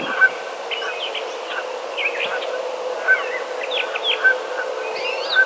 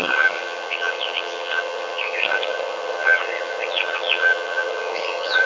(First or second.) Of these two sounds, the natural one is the first